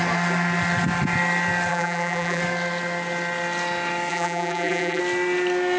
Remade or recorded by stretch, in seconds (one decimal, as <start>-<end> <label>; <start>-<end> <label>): 0.0-1.7 recorded; 1.7-2.4 remade; 2.4-4.1 recorded; 4.1-5.0 remade; 5.0-5.8 recorded